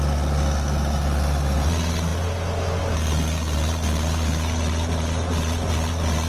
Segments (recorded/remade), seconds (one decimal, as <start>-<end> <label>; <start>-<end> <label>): 0.0-6.3 recorded